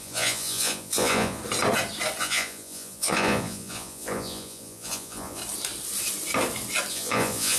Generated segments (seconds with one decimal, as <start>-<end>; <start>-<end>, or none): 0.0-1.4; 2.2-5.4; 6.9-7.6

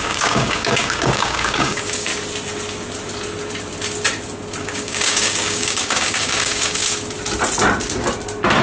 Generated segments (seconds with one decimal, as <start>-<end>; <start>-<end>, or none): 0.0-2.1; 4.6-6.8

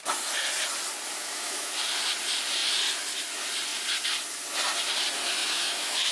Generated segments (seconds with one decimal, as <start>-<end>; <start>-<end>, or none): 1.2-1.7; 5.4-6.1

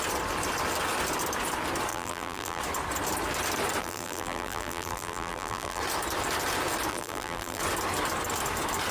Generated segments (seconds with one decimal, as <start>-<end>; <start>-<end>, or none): 1.9-2.6; 3.8-5.8; 6.9-7.6